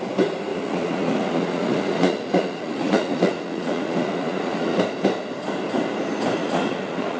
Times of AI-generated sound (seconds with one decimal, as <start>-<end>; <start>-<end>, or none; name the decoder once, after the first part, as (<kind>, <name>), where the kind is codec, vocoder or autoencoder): 0.5-4.8 (vocoder, Vocos); 6.4-7.2